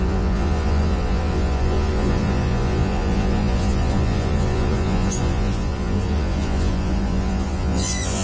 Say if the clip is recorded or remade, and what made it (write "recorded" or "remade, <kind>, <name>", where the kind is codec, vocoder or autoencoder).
remade, vocoder, Vocos